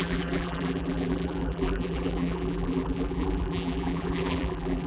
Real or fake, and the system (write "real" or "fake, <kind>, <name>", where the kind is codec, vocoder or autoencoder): fake, vocoder, BigVGAN v2